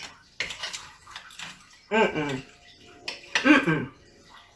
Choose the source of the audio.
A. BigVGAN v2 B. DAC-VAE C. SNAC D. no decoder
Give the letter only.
D